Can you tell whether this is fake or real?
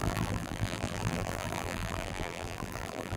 fake